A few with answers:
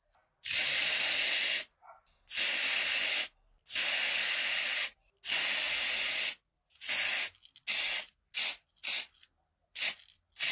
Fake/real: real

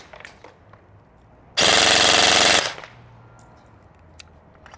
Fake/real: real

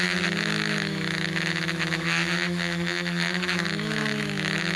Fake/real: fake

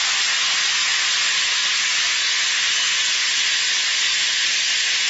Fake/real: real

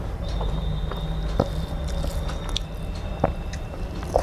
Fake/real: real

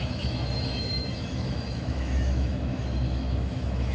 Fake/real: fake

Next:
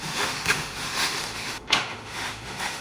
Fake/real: fake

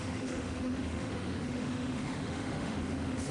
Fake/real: fake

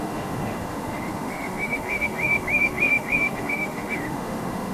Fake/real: fake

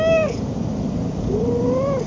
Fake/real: real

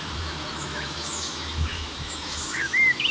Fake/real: fake